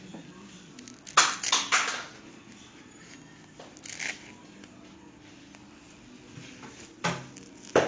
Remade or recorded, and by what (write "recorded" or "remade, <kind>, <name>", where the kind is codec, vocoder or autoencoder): recorded